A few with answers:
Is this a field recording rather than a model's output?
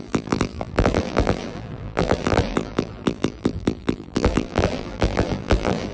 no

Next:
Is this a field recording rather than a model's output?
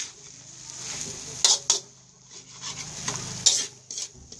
yes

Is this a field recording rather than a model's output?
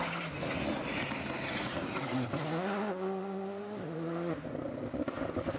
yes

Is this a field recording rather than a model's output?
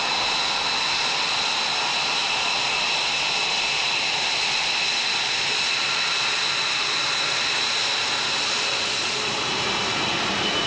yes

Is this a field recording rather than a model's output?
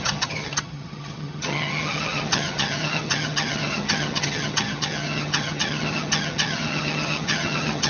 no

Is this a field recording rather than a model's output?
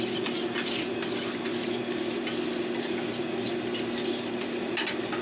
yes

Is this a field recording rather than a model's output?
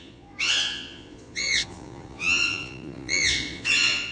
no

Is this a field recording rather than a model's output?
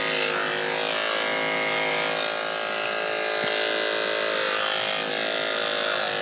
yes